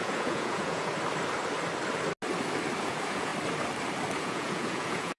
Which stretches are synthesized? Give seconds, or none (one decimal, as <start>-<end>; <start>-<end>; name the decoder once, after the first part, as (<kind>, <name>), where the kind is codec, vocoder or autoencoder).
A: 0.0-0.9 (vocoder, Vocos); 2.8-3.3; 4.2-5.2

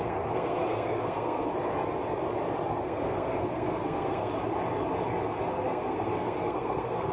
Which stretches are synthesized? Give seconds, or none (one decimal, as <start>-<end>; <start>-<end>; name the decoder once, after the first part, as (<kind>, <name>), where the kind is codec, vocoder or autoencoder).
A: 0.0-1.5 (codec, SNAC); 2.8-4.3; 5.5-7.1

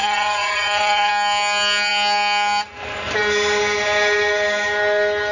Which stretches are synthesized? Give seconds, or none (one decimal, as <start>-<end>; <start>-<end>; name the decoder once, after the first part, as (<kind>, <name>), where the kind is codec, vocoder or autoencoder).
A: 0.0-1.1 (vocoder, Vocos)

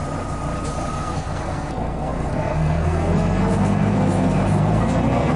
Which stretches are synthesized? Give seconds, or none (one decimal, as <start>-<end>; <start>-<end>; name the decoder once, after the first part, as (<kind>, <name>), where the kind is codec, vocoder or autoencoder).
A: 0.9-5.4 (codec, SNAC)

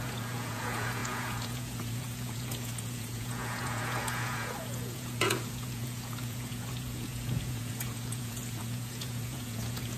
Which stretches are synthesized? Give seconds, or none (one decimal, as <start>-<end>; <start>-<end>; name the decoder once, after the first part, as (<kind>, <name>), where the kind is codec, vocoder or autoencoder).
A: 0.0-10.0 (vocoder, Vocos)